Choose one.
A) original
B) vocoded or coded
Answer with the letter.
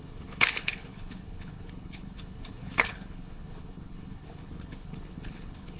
B